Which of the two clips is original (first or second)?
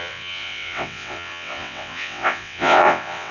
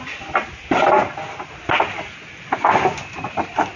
second